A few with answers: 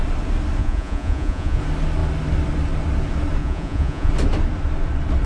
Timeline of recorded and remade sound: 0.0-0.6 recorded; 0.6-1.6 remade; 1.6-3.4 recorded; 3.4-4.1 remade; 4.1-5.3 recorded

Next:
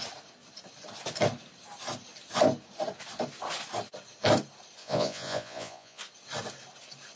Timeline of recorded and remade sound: 0.0-4.8 recorded; 4.8-6.0 remade; 6.0-7.2 recorded

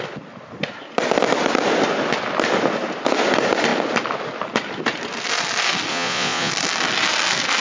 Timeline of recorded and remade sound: 0.0-5.9 recorded; 5.9-6.5 remade; 6.5-7.6 recorded